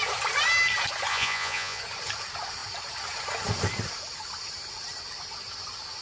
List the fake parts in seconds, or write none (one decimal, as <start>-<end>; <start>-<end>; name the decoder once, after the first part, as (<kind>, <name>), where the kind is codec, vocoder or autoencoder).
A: 1.1-1.8 (vocoder, Vocos)